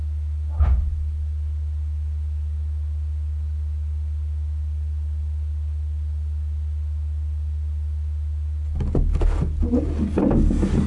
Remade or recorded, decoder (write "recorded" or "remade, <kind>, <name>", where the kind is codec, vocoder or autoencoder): recorded